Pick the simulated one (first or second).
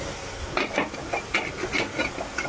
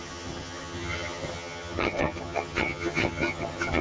second